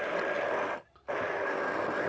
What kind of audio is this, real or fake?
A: real